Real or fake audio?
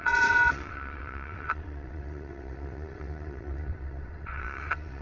fake